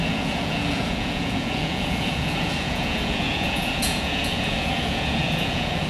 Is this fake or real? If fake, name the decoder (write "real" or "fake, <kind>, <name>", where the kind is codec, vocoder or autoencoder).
fake, vocoder, Vocos